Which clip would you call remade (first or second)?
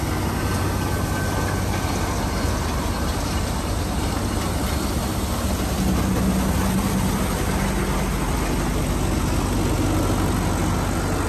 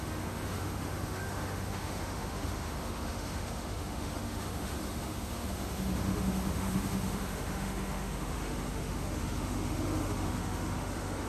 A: second